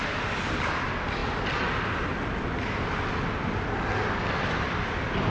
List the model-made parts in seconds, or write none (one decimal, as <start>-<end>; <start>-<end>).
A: none